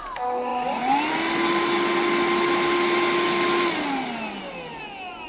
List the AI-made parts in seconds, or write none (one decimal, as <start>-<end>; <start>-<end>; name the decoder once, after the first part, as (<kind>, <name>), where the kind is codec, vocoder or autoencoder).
none